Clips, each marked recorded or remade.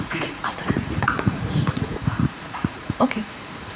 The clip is remade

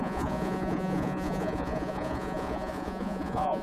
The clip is remade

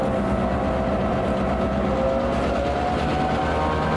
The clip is recorded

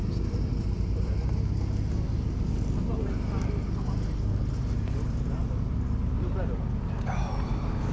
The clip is recorded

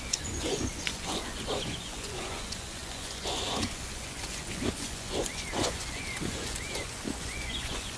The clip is remade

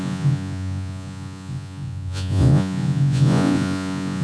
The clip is remade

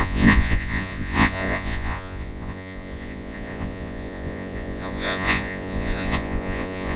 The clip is remade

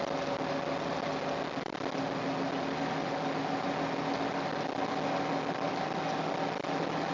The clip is recorded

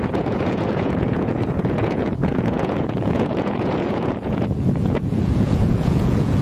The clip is remade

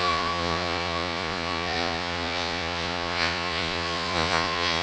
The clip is remade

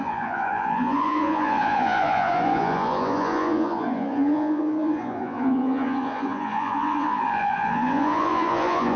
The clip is remade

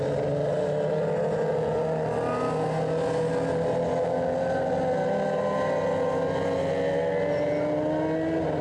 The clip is recorded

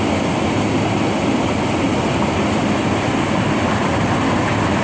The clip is recorded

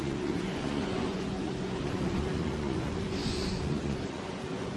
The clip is remade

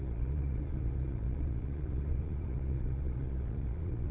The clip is remade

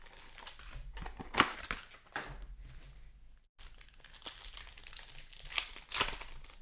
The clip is recorded